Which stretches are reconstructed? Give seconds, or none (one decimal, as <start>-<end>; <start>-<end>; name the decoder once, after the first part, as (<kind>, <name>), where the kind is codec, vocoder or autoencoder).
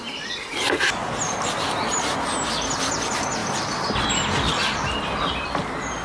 0.0-1.0 (vocoder, BigVGAN v2); 3.0-6.0